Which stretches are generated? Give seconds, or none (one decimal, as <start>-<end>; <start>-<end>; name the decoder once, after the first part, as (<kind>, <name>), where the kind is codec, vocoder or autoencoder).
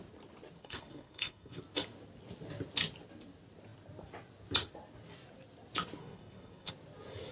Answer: 0.6-1.6 (codec, SNAC); 6.0-6.7